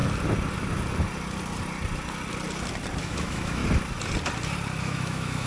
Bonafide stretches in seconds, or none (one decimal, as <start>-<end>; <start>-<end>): 0.0-3.0; 3.6-4.8